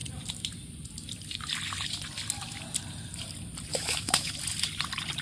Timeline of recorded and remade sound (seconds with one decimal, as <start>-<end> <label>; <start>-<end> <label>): 0.0-3.7 recorded; 3.7-4.3 remade; 4.3-5.2 recorded